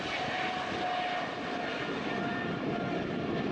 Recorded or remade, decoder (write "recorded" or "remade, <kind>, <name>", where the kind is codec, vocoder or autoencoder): recorded